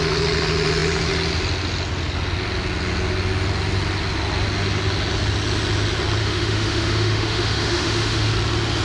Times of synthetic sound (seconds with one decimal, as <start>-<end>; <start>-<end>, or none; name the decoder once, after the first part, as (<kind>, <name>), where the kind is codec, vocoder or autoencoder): 6.2-8.3 (autoencoder, DAC-VAE)